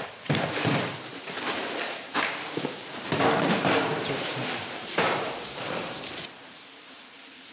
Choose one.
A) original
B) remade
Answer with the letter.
B